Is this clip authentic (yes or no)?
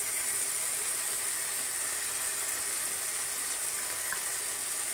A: yes